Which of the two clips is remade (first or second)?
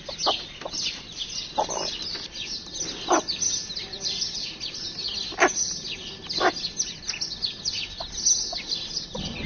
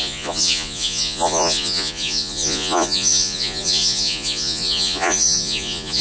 second